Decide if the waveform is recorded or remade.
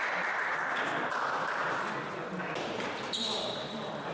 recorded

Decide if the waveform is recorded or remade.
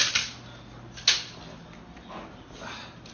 recorded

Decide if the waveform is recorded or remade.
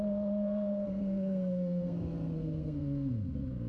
remade